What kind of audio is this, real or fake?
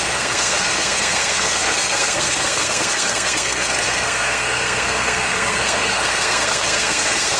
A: fake